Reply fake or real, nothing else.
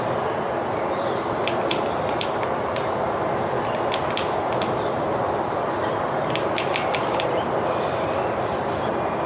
real